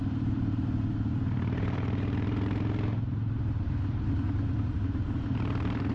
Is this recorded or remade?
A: remade